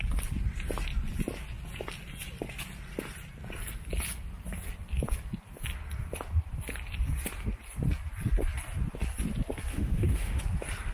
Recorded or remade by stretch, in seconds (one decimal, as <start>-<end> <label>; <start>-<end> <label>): 0.0-9.7 recorded; 9.7-10.4 remade; 10.4-10.9 recorded